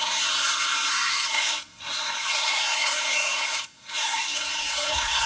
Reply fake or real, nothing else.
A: fake